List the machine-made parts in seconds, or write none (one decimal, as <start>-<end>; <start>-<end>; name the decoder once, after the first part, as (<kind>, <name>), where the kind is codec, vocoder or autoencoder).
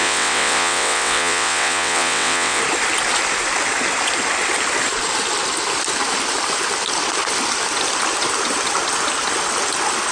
0.0-2.6 (vocoder, WaveNeXt)